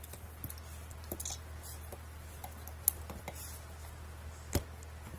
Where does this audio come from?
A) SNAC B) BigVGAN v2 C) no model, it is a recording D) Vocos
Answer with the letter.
C